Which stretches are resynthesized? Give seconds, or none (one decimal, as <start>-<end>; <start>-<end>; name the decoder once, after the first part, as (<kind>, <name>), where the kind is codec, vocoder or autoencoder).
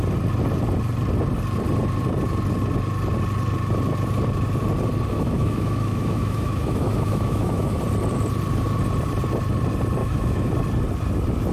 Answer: 5.1-7.8 (autoencoder, DAC-VAE); 10.0-10.5